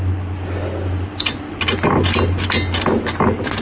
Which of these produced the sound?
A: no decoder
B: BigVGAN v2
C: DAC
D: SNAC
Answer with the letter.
A